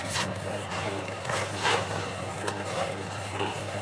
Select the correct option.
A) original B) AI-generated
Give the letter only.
B